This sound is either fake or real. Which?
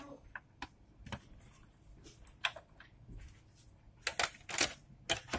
real